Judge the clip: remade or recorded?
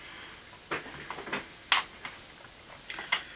recorded